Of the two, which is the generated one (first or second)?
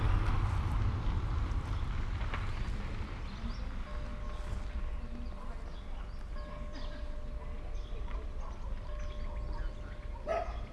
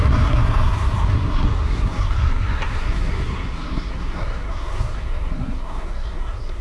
second